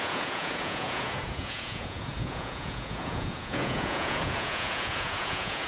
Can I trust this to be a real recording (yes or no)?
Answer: no